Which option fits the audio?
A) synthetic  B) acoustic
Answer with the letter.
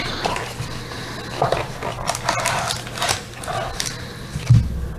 B